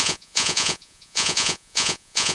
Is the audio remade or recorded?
remade